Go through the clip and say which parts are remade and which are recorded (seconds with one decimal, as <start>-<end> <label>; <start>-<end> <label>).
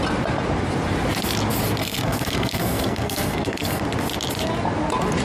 0.0-1.8 recorded; 1.8-3.8 remade; 3.8-5.2 recorded